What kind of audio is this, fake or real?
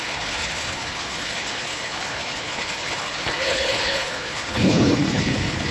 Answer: fake